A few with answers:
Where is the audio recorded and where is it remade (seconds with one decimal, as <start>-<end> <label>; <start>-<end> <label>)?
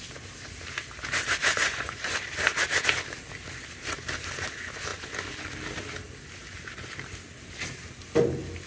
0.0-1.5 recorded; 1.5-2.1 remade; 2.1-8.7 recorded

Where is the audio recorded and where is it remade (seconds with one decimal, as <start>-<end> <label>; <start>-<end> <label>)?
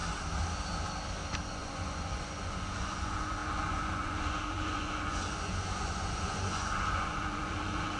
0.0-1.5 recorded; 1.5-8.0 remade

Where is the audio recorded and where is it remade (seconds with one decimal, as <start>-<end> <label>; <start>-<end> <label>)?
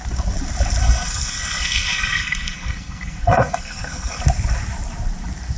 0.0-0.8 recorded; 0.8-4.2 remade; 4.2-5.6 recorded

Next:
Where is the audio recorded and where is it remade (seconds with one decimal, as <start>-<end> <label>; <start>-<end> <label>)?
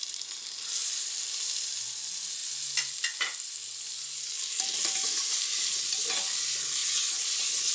0.0-6.8 recorded; 6.8-7.7 remade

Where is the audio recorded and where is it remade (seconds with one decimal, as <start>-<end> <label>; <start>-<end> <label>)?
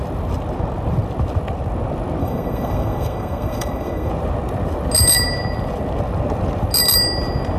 0.0-2.2 recorded; 2.2-4.1 remade; 4.1-7.6 recorded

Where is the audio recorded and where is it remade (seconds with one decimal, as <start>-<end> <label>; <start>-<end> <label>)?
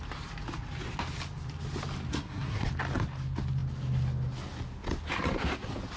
0.0-2.1 recorded; 2.1-2.7 remade; 2.7-6.0 recorded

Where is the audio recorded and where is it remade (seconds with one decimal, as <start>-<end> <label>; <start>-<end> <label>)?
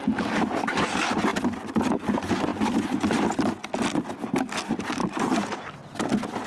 0.0-5.0 recorded; 5.0-5.6 remade; 5.6-6.5 recorded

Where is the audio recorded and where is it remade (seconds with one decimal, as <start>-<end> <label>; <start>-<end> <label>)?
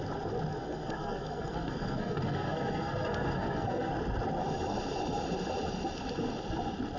0.0-0.5 recorded; 0.5-3.9 remade; 3.9-7.0 recorded